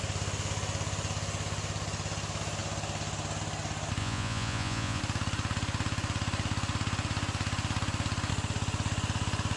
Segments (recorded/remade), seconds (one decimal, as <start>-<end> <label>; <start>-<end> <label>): 0.0-4.0 recorded; 4.0-5.0 remade; 5.0-9.6 recorded